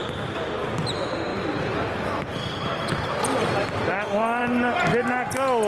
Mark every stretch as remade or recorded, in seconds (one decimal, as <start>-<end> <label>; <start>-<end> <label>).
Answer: 0.0-1.3 recorded; 1.3-3.0 remade; 3.0-3.6 recorded; 3.6-4.4 remade; 4.4-5.7 recorded